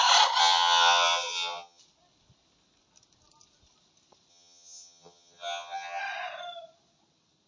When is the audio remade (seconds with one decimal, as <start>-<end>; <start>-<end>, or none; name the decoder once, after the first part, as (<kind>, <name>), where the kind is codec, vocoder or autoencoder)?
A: 0.4-1.8 (vocoder, HiFi-GAN); 4.3-6.0

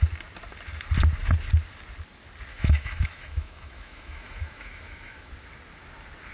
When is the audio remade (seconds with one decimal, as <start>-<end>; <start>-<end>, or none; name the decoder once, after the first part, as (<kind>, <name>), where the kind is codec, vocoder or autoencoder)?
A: 2.5-5.3 (autoencoder, DAC-VAE)

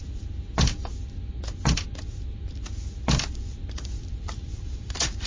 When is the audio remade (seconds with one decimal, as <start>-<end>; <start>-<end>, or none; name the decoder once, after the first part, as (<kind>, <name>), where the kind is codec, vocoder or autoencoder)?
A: 0.0-0.8 (vocoder, BigVGAN v2); 4.0-5.3

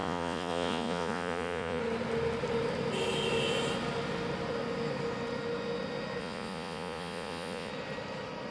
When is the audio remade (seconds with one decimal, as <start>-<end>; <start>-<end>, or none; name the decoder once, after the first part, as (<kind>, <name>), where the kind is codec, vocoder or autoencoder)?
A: 0.0-1.8 (vocoder, Vocos); 6.2-7.7

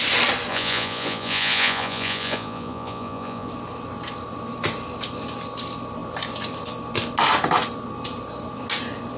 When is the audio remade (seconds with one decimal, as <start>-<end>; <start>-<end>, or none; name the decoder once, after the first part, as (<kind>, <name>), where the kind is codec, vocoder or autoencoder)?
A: 0.5-3.5 (vocoder, Vocos)